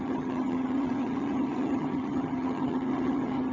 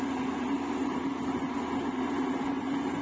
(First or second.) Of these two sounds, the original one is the second